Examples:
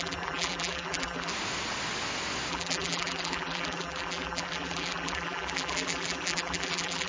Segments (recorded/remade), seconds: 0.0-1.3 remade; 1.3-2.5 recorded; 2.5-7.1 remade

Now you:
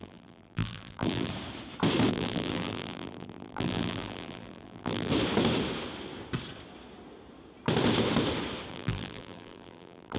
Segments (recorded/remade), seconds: 0.0-1.3 remade; 1.3-2.1 recorded; 2.1-5.1 remade; 5.1-8.7 recorded; 8.7-10.2 remade

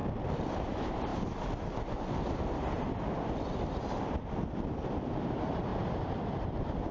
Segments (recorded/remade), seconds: 0.0-0.6 recorded; 0.6-1.1 remade; 1.1-5.2 recorded; 5.2-5.7 remade; 5.7-6.3 recorded; 6.3-6.9 remade